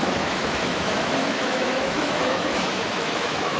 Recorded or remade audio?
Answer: remade